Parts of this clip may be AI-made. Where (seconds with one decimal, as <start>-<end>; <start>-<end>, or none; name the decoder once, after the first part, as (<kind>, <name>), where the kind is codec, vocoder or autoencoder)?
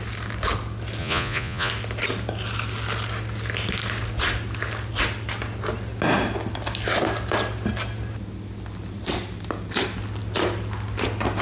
1.0-1.7 (vocoder, Vocos)